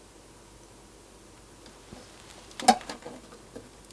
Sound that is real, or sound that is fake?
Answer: real